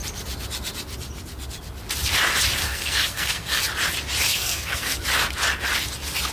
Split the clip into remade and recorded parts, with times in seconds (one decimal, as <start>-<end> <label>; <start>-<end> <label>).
0.0-2.6 recorded; 2.6-3.6 remade; 3.6-4.3 recorded; 4.3-5.0 remade; 5.0-6.3 recorded